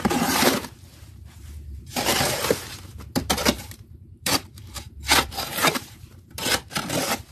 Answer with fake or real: fake